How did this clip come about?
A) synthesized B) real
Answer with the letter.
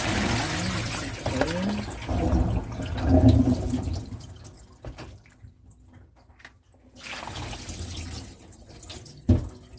B